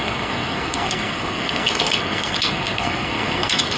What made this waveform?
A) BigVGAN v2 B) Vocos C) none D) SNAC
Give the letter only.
D